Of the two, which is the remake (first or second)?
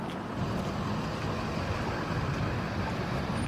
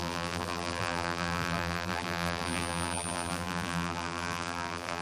second